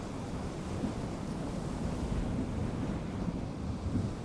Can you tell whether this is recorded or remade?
recorded